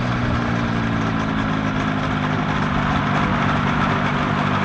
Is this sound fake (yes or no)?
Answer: no